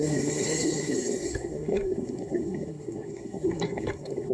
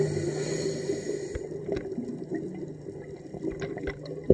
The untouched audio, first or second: second